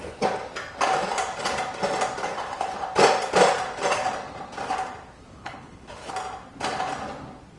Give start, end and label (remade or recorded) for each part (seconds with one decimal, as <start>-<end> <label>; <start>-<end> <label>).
0.0-5.4 recorded; 5.4-6.1 remade; 6.1-7.6 recorded